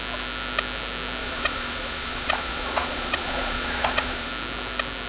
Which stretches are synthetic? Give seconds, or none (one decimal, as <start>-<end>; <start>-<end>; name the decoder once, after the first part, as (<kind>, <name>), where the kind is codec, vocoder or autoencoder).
1.2-4.3 (vocoder, Vocos)